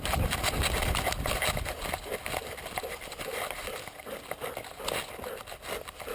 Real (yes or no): yes